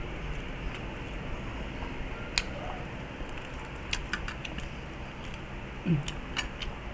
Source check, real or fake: real